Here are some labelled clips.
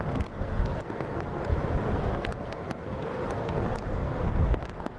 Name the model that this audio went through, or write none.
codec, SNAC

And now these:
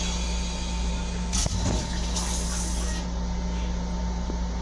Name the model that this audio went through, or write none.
none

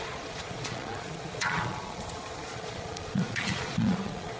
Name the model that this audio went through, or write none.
vocoder, Vocos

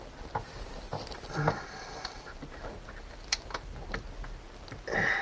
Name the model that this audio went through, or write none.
none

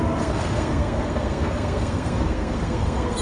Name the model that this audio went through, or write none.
codec, SNAC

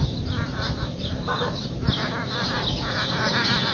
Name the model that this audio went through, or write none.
none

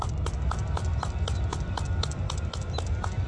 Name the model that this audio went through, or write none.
none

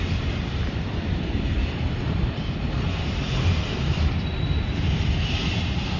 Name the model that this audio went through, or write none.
vocoder, BigVGAN v2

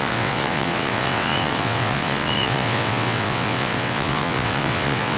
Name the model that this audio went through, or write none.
vocoder, WaveNeXt